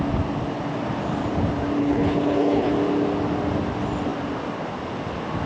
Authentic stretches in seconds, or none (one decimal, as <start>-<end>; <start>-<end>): 0.0-1.8; 2.7-5.5